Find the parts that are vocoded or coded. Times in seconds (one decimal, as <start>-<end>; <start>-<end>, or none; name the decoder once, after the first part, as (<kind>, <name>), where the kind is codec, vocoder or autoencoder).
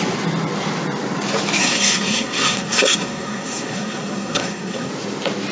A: 1.6-4.9 (codec, SNAC)